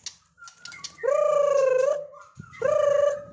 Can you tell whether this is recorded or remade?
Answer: recorded